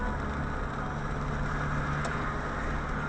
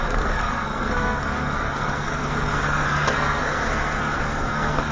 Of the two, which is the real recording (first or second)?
first